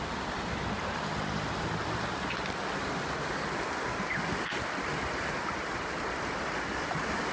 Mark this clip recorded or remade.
remade